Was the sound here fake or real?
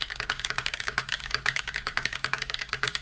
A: fake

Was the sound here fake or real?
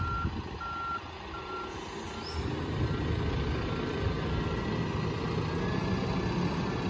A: real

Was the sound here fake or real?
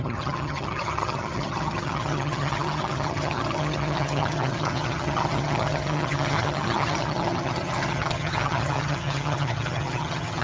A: fake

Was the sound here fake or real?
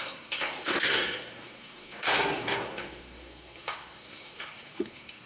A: fake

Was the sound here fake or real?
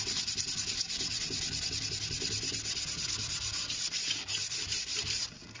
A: fake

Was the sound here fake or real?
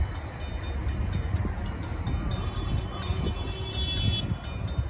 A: real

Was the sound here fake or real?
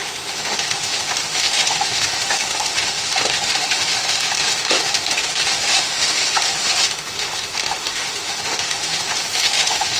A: fake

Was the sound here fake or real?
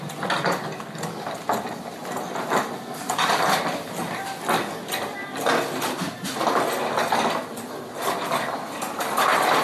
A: real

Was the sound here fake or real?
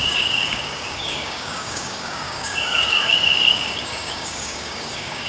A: fake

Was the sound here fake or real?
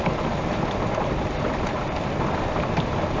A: real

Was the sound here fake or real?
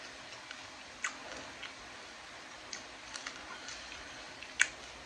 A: real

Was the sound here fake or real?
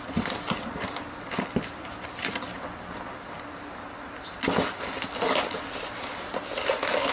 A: real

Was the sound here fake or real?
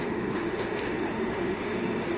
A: fake